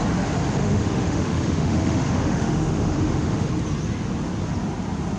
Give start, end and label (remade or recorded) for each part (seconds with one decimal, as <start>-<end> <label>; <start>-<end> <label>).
0.0-0.6 recorded; 0.6-3.5 remade; 3.5-5.2 recorded